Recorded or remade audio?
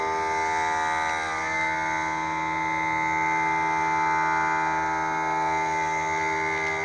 recorded